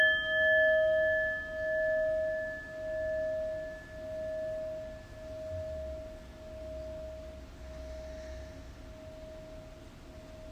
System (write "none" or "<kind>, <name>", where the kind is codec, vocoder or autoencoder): none